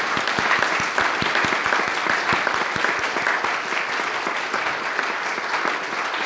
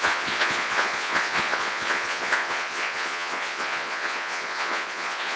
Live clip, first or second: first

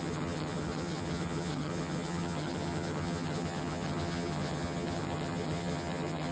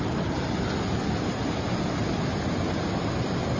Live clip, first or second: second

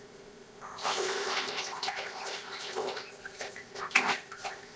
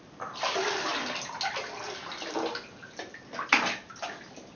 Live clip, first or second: second